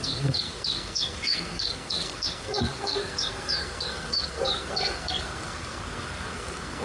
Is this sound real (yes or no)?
no